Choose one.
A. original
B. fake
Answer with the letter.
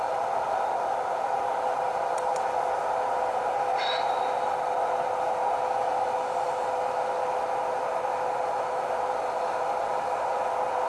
A